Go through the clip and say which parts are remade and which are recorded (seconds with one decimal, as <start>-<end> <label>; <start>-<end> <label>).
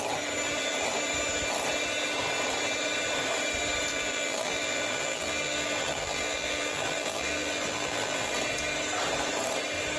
0.0-3.9 recorded; 3.9-8.3 remade; 8.3-10.0 recorded